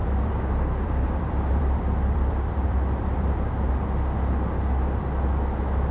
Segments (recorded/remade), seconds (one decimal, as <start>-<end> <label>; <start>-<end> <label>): 0.0-3.5 remade; 3.5-5.9 recorded